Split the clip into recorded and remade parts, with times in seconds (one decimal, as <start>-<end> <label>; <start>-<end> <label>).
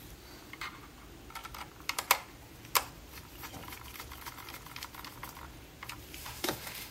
0.0-6.2 recorded; 6.2-6.9 remade